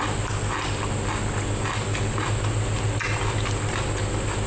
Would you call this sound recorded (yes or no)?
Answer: yes